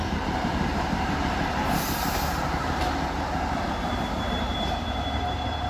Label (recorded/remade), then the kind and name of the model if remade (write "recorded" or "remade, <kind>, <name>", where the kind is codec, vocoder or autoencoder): remade, vocoder, BigVGAN v2